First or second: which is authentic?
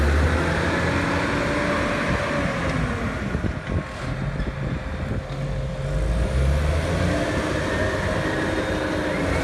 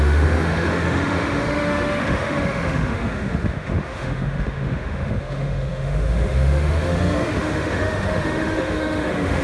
first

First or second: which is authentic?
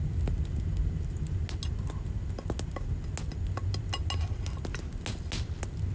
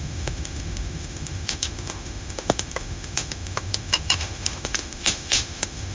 first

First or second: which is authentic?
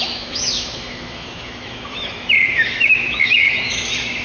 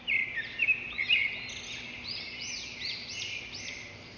second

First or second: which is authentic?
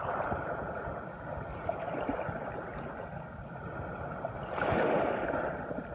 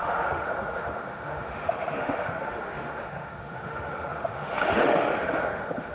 first